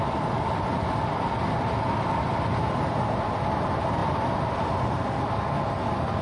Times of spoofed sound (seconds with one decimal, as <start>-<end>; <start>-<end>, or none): none